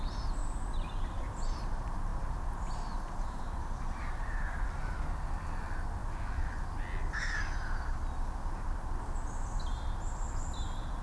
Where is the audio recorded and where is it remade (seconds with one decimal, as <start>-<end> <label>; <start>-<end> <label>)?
0.0-11.0 recorded